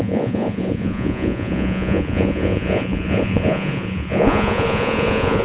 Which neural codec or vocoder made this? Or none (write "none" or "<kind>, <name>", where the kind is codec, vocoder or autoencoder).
vocoder, Vocos